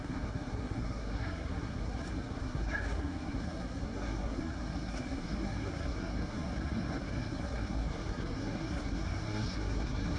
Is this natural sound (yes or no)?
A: no